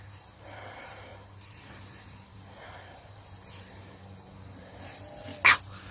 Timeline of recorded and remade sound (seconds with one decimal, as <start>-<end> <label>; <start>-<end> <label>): 0.0-5.3 remade; 5.3-5.9 recorded